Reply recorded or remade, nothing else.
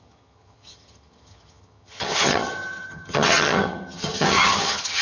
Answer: remade